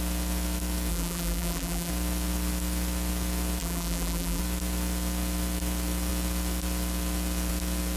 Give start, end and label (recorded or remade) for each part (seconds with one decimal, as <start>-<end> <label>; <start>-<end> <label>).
0.0-0.9 recorded; 0.9-1.9 remade; 1.9-3.6 recorded; 3.6-4.4 remade; 4.4-8.0 recorded